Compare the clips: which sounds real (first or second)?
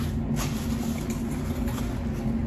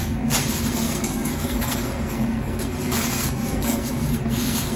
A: first